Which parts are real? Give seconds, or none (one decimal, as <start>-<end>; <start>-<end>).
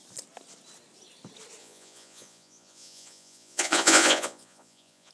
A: 0.0-1.6